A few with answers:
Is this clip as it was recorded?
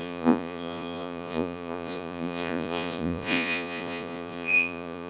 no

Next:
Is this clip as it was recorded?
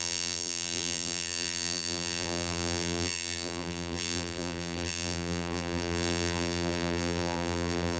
no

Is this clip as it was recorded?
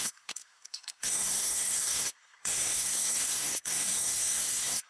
no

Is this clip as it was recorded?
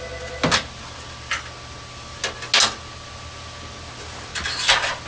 yes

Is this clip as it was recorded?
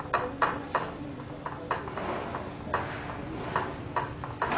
yes